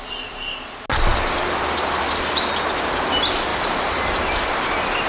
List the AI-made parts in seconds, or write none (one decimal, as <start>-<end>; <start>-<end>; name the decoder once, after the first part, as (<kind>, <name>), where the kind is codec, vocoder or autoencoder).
3.5-4.5 (vocoder, BigVGAN v2)